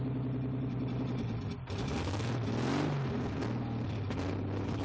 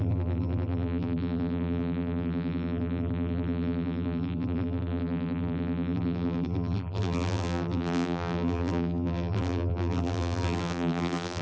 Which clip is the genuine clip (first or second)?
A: first